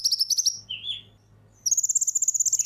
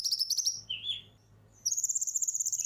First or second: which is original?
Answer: first